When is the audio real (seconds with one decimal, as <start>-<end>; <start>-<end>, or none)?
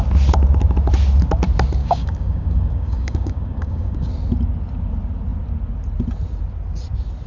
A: 0.0-1.8; 4.1-7.3